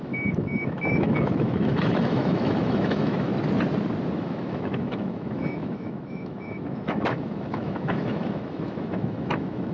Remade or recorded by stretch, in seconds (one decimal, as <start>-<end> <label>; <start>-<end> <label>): 0.0-3.3 remade; 3.3-4.1 recorded; 4.1-9.7 remade